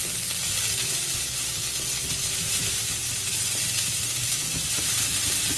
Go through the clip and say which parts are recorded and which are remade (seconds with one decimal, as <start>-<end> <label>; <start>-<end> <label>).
0.0-5.6 recorded